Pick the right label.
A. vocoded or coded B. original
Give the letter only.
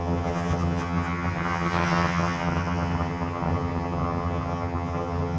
A